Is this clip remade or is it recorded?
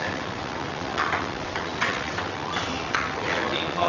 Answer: remade